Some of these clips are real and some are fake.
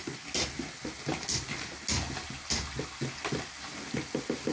real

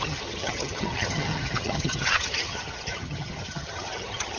fake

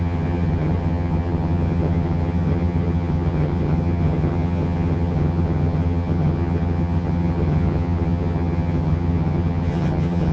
fake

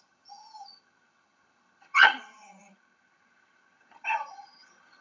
fake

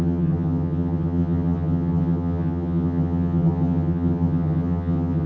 fake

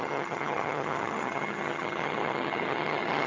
fake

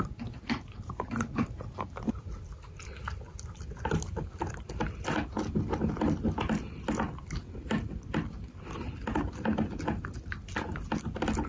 real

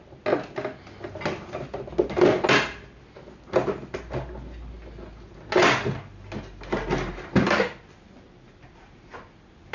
real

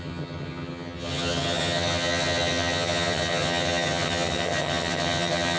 fake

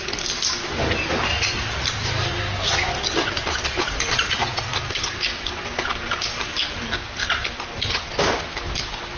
real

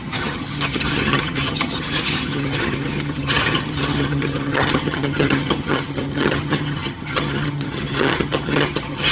fake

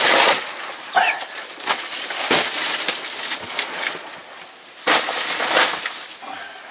real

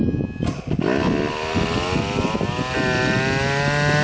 real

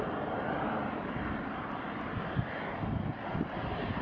real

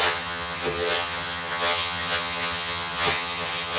fake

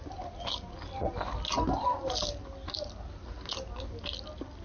real